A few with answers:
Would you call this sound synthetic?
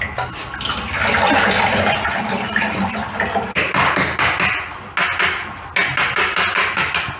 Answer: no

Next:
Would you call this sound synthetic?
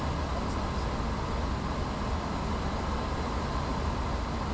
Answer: no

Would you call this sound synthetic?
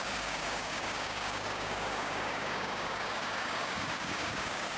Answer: yes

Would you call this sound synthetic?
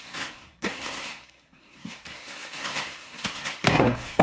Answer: yes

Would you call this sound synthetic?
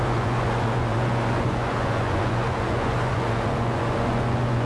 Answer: yes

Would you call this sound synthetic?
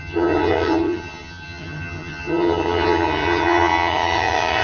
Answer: yes